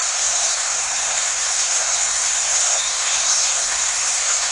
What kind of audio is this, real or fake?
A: fake